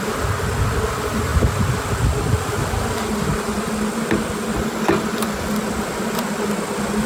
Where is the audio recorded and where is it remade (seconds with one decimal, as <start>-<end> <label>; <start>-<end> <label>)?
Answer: 0.0-7.1 recorded